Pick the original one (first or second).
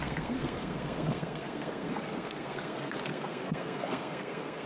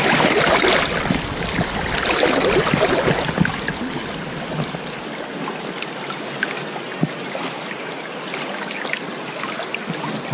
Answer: second